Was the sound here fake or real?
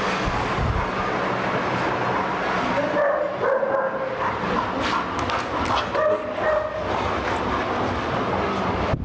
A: real